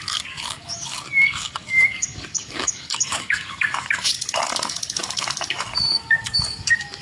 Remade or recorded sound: remade